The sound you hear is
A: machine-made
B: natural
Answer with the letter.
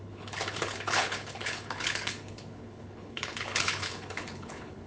A